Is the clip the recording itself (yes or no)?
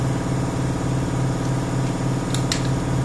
yes